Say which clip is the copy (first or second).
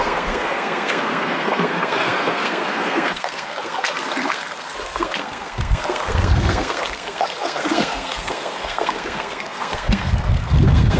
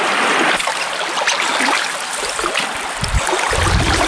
first